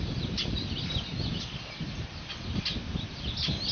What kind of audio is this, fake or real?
real